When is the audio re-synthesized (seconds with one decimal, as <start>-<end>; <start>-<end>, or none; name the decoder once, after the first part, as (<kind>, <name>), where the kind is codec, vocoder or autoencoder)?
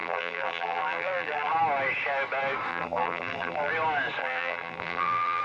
0.0-1.5 (vocoder, BigVGAN v2); 2.7-3.7; 4.2-5.4